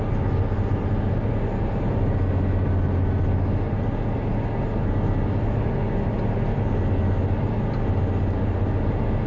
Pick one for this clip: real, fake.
real